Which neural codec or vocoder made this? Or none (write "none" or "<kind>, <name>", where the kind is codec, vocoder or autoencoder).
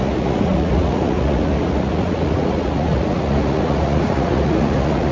vocoder, Vocos